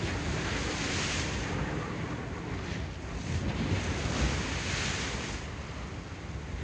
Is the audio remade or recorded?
recorded